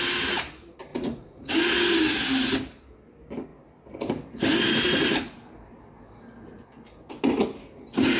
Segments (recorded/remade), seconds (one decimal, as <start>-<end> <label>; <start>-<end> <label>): 0.0-0.9 recorded; 0.9-1.5 remade; 1.5-8.2 recorded